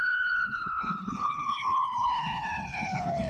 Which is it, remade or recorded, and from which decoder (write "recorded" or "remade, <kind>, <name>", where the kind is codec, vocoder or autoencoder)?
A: remade, codec, HILCodec